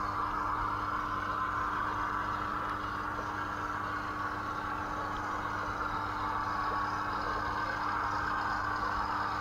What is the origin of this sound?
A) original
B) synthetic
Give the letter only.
A